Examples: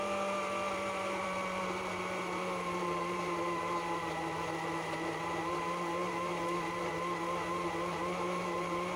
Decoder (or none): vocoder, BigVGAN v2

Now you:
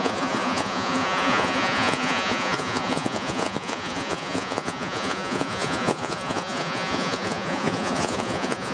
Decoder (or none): vocoder, Vocos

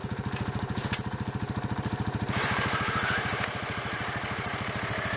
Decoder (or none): vocoder, BigVGAN v2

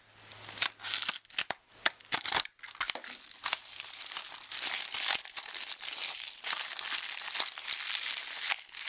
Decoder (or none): none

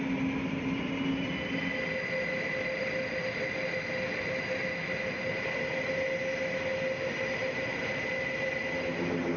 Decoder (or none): none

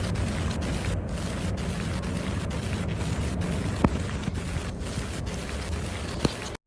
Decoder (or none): none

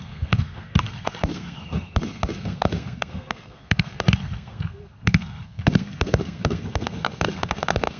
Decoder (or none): codec, SNAC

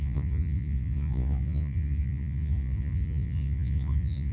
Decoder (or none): vocoder, Vocos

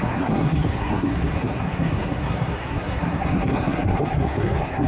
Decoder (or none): codec, SNAC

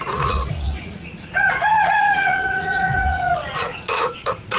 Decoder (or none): vocoder, Vocos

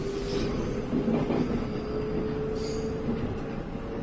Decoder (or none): none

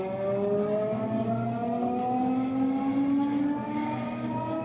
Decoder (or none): none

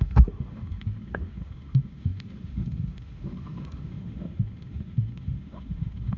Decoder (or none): autoencoder, DAC-VAE